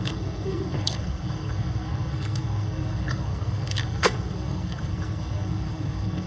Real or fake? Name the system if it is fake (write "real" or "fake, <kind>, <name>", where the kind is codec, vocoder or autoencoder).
fake, codec, SNAC